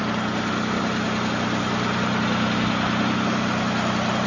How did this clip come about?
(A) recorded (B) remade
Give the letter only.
A